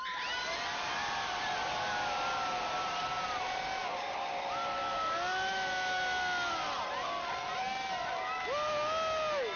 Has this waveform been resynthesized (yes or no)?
no